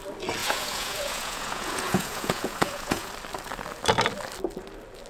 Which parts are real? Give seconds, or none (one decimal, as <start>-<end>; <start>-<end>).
0.0-0.4; 3.1-5.1